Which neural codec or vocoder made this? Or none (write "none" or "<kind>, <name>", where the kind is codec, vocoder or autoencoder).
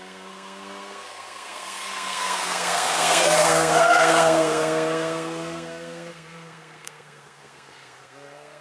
codec, SNAC